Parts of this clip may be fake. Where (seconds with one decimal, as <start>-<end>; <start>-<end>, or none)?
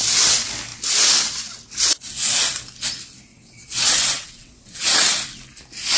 3.3-5.1